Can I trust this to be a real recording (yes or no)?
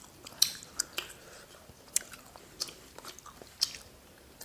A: yes